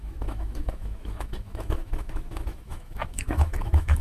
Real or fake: fake